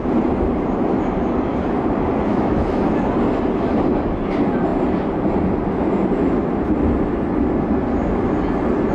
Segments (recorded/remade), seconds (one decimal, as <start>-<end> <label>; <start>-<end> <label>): 0.0-2.3 recorded; 2.3-2.8 remade; 2.8-8.9 recorded